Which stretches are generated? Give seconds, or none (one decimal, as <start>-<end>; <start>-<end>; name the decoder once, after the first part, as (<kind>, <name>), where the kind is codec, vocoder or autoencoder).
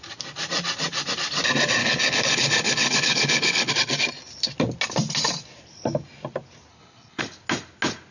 1.8-3.7 (codec, HILCodec); 6.7-7.2